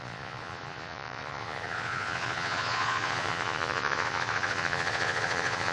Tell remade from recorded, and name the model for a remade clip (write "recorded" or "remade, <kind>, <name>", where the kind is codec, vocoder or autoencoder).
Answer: remade, vocoder, Vocos